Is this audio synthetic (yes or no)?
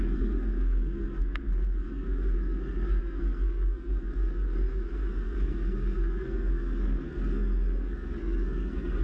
yes